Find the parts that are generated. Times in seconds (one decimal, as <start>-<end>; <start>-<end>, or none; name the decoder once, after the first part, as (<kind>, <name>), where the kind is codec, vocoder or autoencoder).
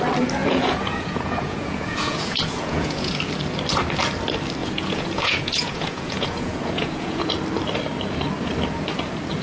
0.4-3.1 (vocoder, Vocos); 4.6-7.3